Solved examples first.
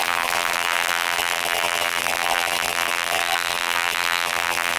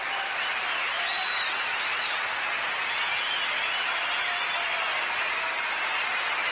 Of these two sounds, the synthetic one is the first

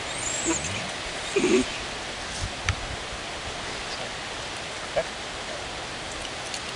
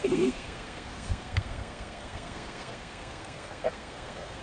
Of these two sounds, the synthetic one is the second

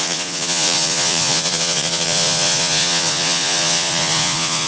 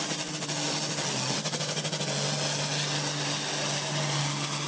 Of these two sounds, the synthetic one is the first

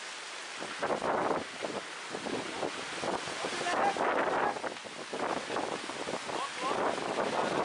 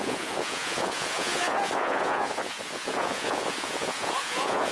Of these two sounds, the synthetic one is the second